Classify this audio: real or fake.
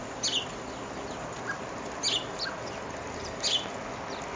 real